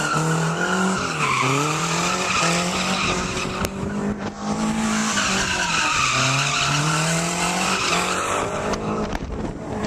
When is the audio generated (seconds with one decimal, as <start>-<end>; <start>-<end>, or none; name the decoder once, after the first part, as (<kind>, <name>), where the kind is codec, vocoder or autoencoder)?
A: 0.0-5.0 (vocoder, BigVGAN v2); 6.8-9.9